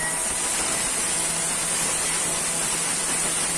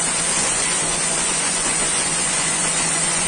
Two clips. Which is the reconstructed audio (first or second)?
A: second